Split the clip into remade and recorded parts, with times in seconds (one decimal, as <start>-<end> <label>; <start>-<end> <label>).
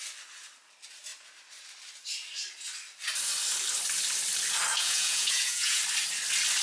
0.0-4.7 recorded; 4.7-5.8 remade; 5.8-6.6 recorded